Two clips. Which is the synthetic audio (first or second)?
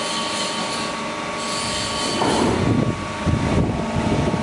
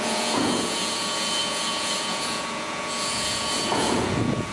second